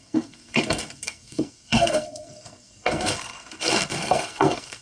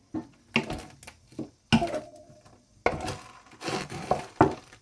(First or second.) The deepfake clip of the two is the first